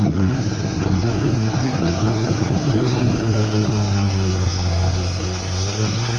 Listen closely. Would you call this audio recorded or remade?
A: remade